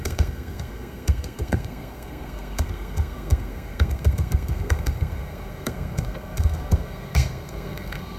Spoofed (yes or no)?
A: yes